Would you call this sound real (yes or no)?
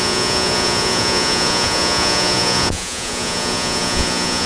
no